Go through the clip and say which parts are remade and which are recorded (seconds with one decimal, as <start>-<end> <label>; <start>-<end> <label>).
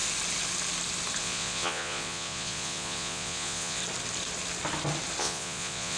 0.0-1.2 recorded; 1.2-3.8 remade; 3.8-5.2 recorded; 5.2-6.0 remade